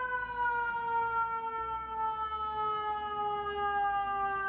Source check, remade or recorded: recorded